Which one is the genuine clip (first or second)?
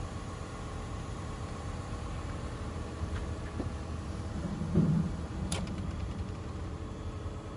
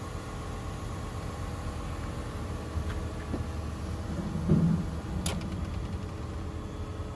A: second